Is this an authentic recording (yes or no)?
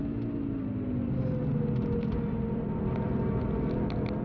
yes